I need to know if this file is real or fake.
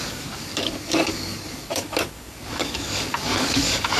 fake